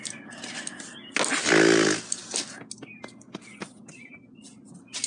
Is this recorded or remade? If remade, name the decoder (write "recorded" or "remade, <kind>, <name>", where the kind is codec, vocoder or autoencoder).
recorded